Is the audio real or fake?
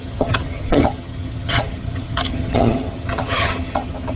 fake